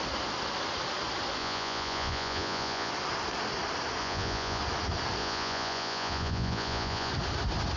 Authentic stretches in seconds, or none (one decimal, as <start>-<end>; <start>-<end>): 0.0-1.4; 2.9-4.0; 4.6-5.2; 7.1-7.8